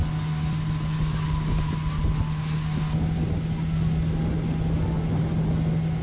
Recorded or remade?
recorded